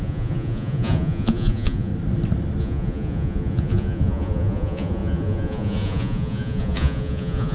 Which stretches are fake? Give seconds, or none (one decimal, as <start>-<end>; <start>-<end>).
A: 0.0-1.9; 2.6-7.5